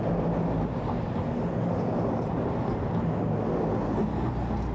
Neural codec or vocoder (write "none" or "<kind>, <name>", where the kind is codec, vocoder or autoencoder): none